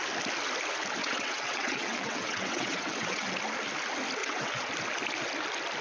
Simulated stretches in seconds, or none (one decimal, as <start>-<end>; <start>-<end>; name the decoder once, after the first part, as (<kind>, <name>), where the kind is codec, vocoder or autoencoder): 1.0-3.3 (vocoder, WaveNeXt); 4.2-4.7